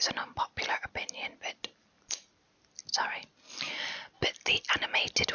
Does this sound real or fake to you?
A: real